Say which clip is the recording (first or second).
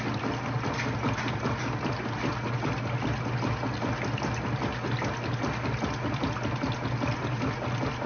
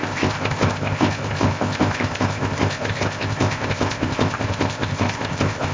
first